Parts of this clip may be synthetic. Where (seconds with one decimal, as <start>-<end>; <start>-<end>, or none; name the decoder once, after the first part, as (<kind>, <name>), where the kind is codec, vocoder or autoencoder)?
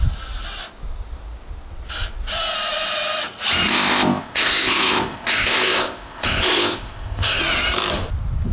3.7-7.4 (codec, ZipCodec)